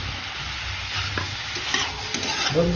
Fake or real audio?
real